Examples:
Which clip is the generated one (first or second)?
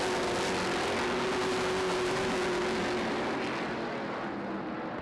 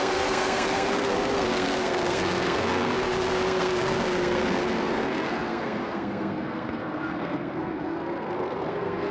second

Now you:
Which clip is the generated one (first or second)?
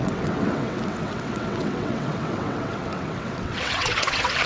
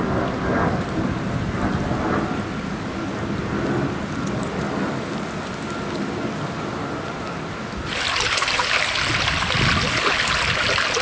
first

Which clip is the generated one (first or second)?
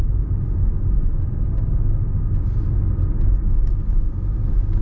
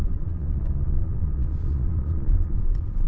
second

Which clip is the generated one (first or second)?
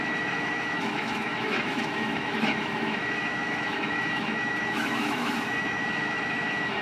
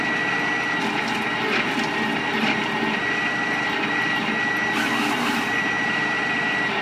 first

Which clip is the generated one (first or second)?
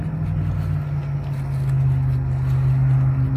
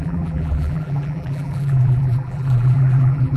second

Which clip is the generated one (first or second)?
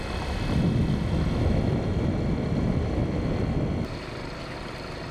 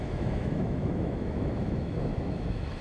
second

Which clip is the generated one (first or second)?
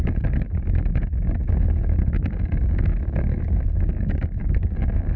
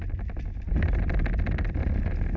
first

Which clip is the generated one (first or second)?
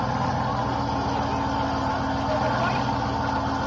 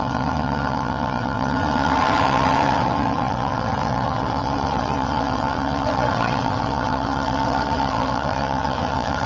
second